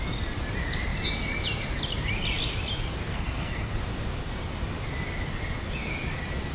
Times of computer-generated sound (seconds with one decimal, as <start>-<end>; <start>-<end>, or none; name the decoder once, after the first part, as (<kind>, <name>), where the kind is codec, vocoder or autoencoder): 3.1-3.7 (codec, SNAC)